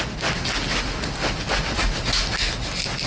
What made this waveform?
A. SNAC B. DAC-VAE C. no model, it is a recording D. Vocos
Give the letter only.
C